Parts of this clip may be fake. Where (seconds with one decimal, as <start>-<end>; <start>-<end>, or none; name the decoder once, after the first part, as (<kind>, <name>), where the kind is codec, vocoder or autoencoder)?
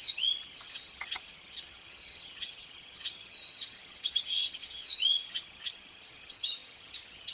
0.0-7.3 (vocoder, HiFi-GAN)